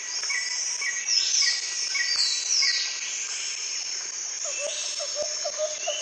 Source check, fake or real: real